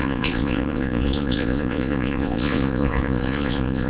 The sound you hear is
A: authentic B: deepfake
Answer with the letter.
B